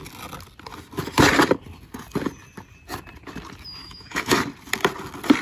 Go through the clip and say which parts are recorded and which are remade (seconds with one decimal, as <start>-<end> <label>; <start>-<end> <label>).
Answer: 0.0-3.8 recorded; 3.8-4.4 remade; 4.4-5.4 recorded

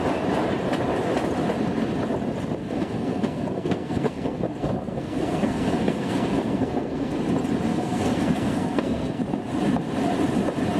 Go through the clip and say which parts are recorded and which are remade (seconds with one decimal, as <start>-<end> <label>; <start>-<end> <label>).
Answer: 0.0-2.6 recorded; 2.6-7.2 remade; 7.2-7.7 recorded; 7.7-9.2 remade; 9.2-10.8 recorded

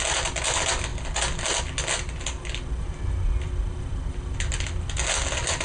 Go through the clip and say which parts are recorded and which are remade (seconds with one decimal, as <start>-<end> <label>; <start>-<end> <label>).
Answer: 0.0-5.6 recorded

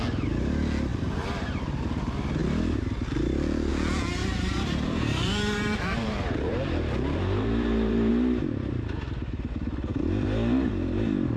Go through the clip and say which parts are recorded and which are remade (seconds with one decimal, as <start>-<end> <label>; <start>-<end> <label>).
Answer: 0.0-0.9 recorded; 0.9-1.8 remade; 1.8-4.2 recorded; 4.2-8.1 remade; 8.1-11.4 recorded

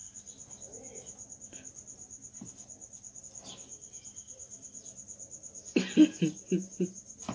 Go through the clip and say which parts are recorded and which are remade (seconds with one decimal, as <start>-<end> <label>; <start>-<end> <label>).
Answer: 0.0-7.3 recorded

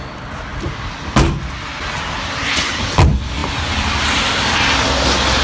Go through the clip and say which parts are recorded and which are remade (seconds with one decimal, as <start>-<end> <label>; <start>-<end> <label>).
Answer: 0.0-5.4 recorded

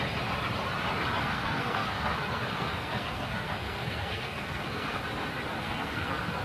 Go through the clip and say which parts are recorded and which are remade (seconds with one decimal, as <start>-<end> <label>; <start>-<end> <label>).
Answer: 0.0-1.2 recorded; 1.2-5.0 remade; 5.0-5.6 recorded; 5.6-6.4 remade

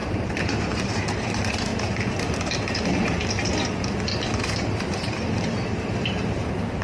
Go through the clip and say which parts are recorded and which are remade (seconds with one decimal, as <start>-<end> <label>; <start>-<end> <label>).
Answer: 0.0-1.7 remade; 1.7-4.4 recorded; 4.4-6.8 remade